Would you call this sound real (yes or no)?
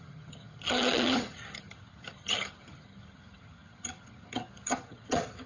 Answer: no